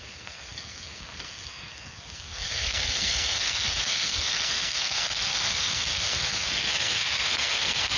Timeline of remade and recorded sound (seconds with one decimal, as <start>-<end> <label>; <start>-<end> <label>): 0.0-8.0 remade